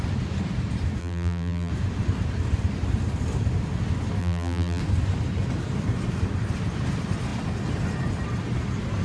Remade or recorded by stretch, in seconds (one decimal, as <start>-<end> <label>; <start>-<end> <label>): 0.0-1.0 recorded; 1.0-1.7 remade; 1.7-4.2 recorded; 4.2-4.8 remade; 4.8-9.0 recorded